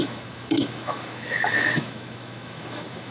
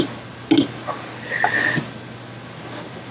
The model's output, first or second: first